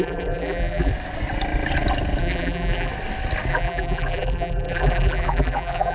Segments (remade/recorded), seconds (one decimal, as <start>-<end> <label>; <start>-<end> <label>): 0.0-0.9 remade; 0.9-2.2 recorded; 2.2-2.9 remade; 2.9-3.5 recorded; 3.5-5.9 remade